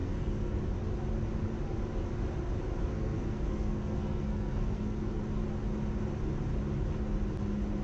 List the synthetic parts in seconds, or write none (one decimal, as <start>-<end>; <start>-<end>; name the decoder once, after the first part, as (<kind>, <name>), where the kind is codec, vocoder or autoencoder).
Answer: 0.0-0.6 (codec, SNAC); 2.9-5.2